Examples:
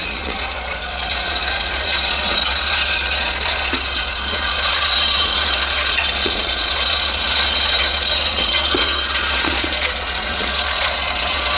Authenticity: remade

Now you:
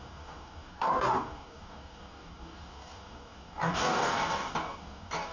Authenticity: remade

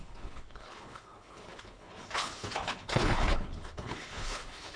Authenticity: remade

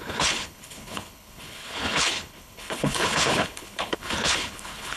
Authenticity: remade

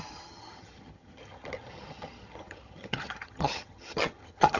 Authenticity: remade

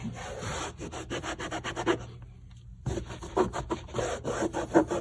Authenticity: recorded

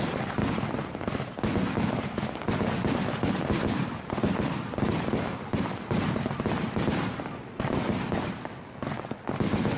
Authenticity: recorded